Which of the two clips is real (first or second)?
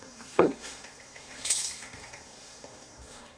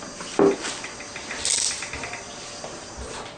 second